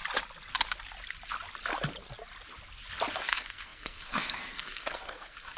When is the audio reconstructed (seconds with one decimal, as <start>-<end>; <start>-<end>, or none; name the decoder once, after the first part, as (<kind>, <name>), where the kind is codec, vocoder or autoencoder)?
3.1-5.6 (codec, SNAC)